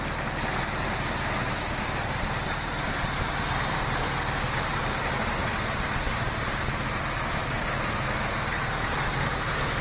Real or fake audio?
real